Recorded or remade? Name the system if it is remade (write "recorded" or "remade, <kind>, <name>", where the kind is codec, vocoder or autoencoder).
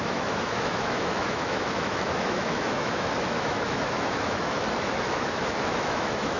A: remade, autoencoder, DAC-VAE